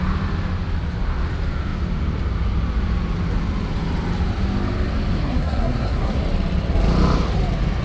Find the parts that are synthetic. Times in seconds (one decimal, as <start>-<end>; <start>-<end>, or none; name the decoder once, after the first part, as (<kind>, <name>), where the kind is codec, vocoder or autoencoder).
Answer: 5.1-6.2 (codec, SNAC)